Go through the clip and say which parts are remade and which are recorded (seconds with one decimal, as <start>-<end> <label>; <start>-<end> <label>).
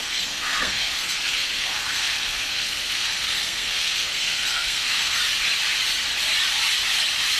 0.0-5.2 remade; 5.2-7.4 recorded